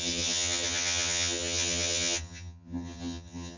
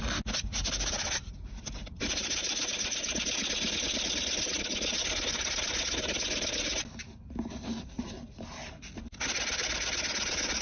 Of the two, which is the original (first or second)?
second